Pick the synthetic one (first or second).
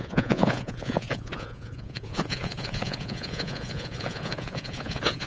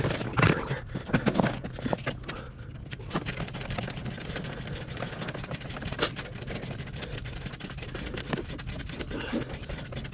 first